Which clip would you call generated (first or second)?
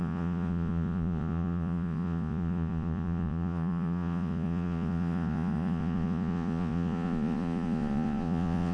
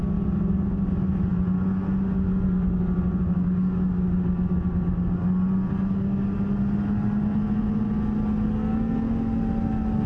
first